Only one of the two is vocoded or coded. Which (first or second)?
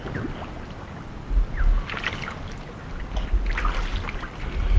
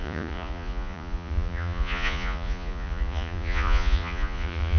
second